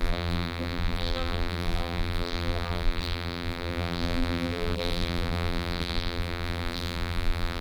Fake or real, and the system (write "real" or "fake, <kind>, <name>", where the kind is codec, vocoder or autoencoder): fake, vocoder, BigVGAN v2